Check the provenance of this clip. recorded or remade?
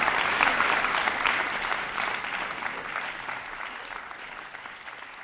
recorded